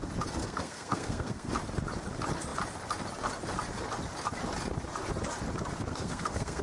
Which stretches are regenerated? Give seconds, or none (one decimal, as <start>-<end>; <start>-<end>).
0.4-1.5; 5.9-6.6